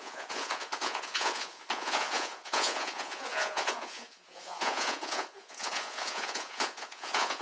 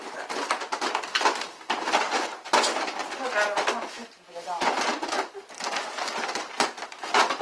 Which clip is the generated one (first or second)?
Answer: first